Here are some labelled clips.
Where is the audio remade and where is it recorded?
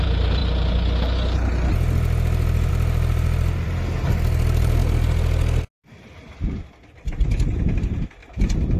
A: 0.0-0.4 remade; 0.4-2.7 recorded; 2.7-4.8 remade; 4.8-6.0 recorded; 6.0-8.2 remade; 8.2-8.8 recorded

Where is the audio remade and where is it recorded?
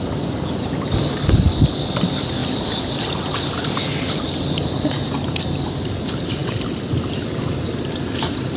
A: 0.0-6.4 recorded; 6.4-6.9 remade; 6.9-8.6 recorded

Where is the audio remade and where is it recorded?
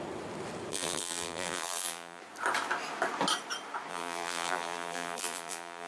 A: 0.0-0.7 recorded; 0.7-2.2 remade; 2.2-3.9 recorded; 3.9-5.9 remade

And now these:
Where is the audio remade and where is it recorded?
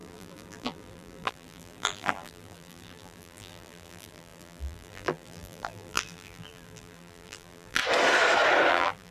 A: 0.0-7.8 remade; 7.8-8.7 recorded; 8.7-9.1 remade